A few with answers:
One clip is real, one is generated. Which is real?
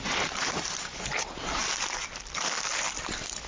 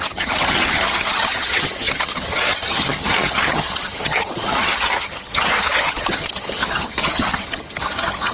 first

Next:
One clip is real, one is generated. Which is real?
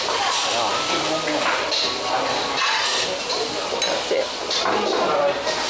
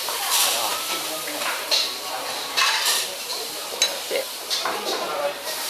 first